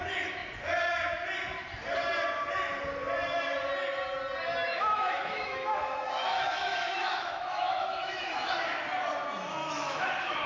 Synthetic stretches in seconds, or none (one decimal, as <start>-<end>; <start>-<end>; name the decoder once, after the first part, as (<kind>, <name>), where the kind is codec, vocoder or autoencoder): 4.6-8.5 (autoencoder, DAC-VAE); 9.6-10.1